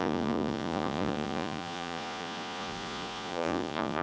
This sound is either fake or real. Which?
fake